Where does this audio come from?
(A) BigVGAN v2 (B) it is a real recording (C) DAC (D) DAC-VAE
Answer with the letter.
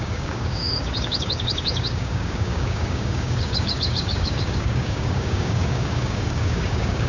C